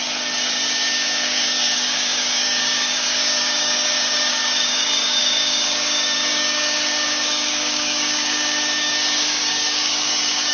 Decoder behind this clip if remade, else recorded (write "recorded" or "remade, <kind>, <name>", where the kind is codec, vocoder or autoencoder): remade, codec, DAC